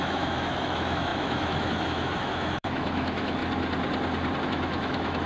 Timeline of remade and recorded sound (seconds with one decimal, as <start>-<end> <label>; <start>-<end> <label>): 0.0-3.4 remade; 3.4-4.4 recorded; 4.4-5.3 remade